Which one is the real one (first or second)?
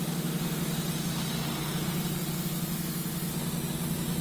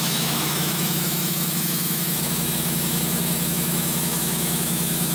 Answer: first